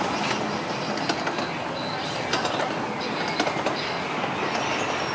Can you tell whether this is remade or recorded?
recorded